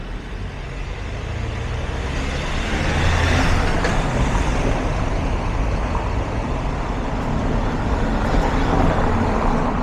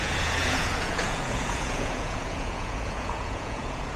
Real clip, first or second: first